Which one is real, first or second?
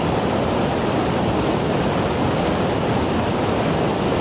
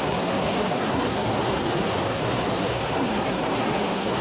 first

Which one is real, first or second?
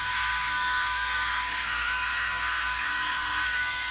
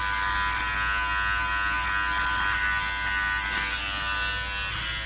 second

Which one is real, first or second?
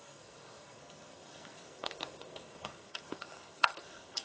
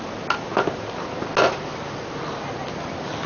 second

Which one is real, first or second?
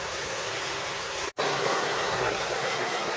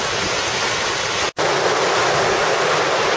second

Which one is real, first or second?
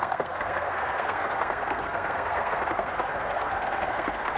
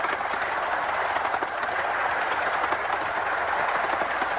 second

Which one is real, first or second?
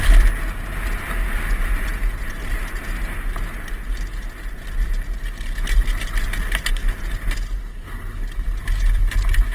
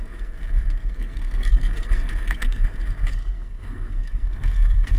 first